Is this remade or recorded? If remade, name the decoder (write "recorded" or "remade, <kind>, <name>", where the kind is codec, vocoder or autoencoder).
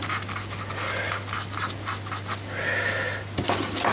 recorded